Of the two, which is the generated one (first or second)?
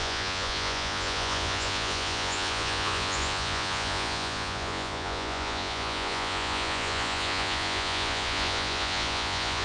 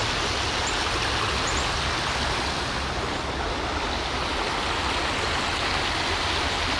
first